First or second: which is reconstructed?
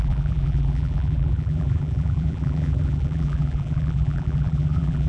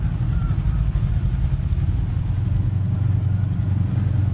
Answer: first